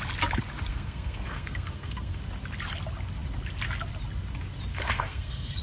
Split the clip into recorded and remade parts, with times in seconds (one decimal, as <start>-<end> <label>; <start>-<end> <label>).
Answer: 0.0-0.7 recorded; 0.7-2.2 remade; 2.2-4.7 recorded; 4.7-5.6 remade